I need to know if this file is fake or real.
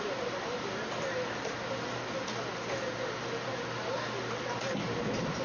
real